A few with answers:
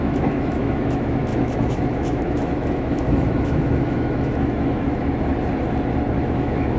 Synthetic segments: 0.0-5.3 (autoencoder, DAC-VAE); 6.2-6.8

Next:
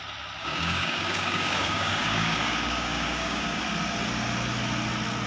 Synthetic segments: 0.4-3.6 (codec, DAC)

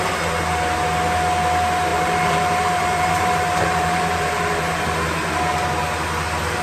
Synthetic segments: 1.9-4.8 (vocoder, BigVGAN v2)

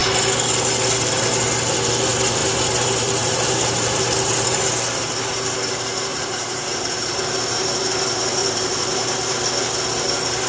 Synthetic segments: 2.4-4.6 (vocoder, BigVGAN v2); 6.1-7.2; 8.4-9.1

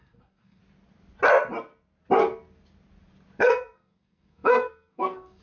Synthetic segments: 0.0-0.6 (codec, SNAC); 3.4-5.4